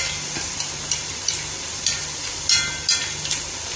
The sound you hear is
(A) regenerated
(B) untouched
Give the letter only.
B